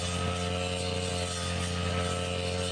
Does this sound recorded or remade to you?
recorded